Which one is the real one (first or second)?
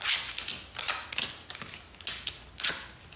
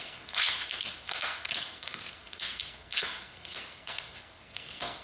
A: first